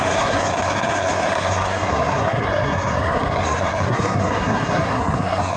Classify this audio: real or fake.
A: fake